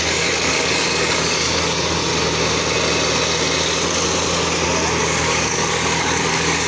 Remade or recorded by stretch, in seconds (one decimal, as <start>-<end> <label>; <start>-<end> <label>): 0.0-2.1 remade; 2.1-5.0 recorded; 5.0-6.7 remade